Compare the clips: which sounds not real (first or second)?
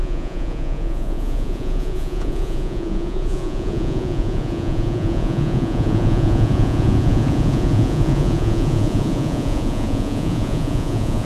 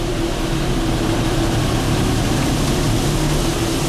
first